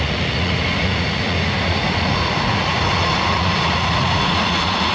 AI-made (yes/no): yes